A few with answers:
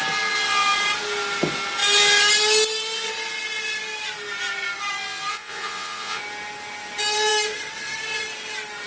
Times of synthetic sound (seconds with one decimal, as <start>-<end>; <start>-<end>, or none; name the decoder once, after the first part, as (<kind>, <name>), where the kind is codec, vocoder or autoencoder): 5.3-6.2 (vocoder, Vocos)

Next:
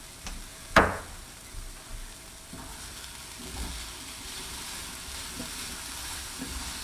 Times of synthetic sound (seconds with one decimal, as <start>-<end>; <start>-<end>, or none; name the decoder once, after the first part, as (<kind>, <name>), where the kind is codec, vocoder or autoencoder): 0.5-1.0 (vocoder, Vocos)

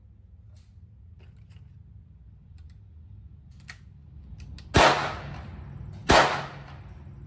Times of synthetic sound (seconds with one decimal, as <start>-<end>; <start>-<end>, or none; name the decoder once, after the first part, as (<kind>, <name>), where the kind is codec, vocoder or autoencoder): none